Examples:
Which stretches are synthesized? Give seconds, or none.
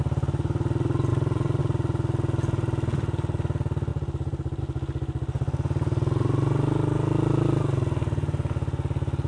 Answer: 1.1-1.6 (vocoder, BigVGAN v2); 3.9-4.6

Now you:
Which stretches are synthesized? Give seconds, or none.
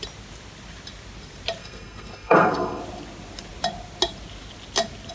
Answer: 1.6-2.8 (codec, SNAC)